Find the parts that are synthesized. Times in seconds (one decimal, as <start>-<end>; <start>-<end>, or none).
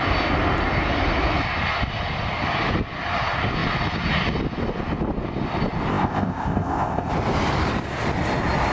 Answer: 5.9-7.1